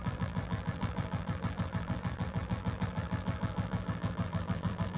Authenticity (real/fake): fake